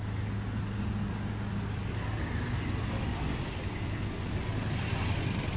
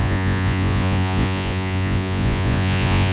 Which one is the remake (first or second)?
second